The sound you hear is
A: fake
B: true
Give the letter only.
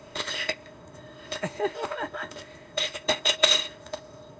A